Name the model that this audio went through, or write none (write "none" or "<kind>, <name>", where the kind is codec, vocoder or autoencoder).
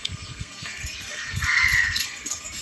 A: codec, SNAC